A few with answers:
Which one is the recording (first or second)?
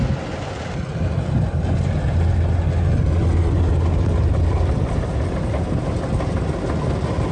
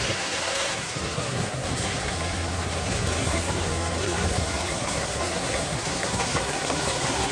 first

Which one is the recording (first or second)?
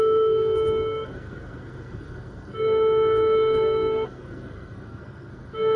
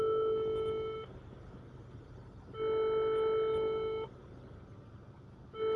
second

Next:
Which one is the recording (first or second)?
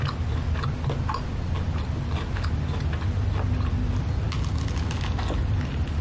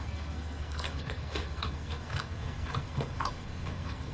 first